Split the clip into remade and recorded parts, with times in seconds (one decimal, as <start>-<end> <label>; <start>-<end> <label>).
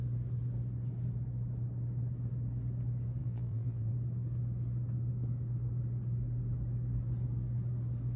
0.0-3.2 recorded; 3.2-3.9 remade; 3.9-8.2 recorded